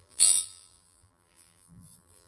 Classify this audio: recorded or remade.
remade